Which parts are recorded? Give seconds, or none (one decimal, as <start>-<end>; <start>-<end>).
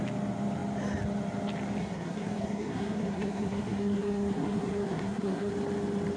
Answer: 0.0-1.8; 5.5-6.2